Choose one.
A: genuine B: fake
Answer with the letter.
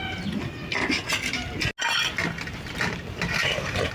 A